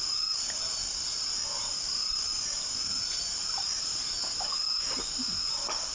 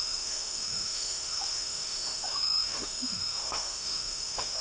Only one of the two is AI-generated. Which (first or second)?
second